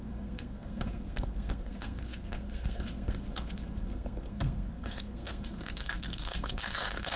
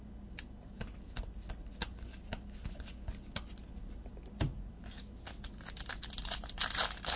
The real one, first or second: second